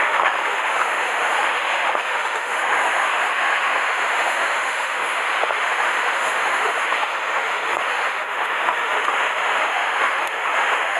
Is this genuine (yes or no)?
no